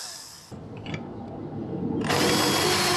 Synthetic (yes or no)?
no